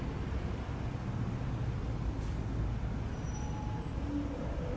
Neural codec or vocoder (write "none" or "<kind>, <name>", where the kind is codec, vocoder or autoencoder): none